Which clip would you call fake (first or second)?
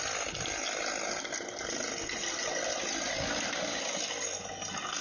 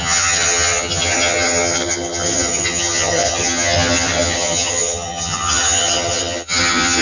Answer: second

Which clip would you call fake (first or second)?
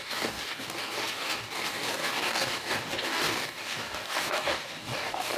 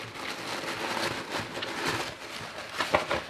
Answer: first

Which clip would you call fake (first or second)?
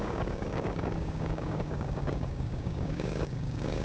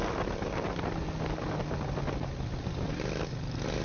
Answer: first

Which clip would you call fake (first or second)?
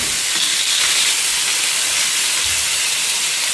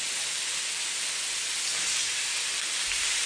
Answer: first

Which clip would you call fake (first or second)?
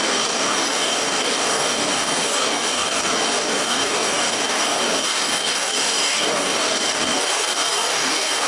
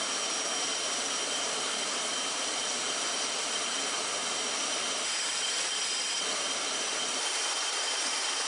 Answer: first